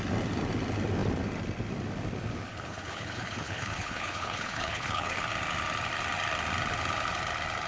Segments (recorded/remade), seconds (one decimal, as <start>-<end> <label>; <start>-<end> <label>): 0.0-2.5 recorded; 2.5-5.2 remade; 5.2-7.7 recorded